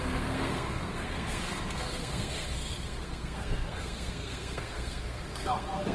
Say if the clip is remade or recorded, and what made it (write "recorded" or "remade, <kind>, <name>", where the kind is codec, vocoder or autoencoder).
remade, codec, SNAC